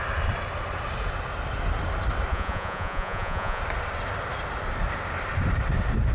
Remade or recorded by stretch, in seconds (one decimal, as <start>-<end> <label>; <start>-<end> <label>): 0.0-2.3 recorded; 2.3-3.6 remade; 3.6-6.1 recorded